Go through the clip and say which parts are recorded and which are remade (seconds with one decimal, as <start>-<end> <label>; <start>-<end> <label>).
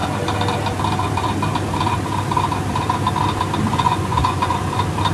0.0-3.7 recorded; 3.7-4.6 remade; 4.6-5.1 recorded